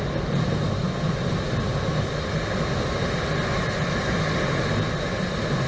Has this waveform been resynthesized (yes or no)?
no